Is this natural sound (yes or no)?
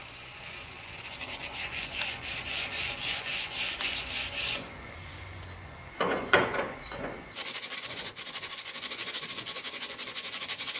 no